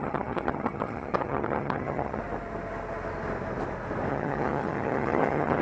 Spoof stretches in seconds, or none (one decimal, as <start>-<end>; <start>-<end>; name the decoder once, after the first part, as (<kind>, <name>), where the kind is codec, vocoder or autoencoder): 0.0-2.2 (vocoder, HiFi-GAN); 4.1-5.6